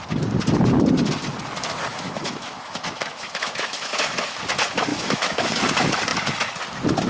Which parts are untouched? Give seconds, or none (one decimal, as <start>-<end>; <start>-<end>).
0.0-1.9; 4.4-4.9; 5.6-7.1

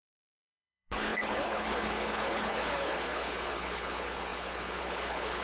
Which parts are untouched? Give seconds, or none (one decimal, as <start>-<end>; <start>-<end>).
none

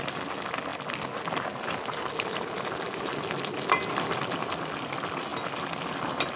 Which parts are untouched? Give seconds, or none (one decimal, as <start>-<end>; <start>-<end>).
0.0-6.4

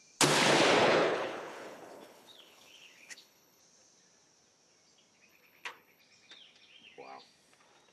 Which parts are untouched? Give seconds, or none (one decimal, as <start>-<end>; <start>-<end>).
0.0-0.8; 3.6-5.3; 6.0-7.9

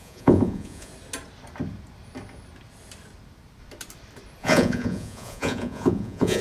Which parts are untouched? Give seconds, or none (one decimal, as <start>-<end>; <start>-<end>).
0.9-4.4

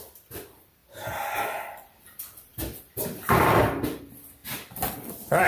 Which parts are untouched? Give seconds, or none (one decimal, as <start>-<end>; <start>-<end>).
0.8-2.0

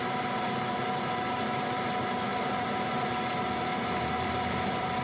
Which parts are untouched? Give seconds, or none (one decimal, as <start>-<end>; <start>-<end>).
none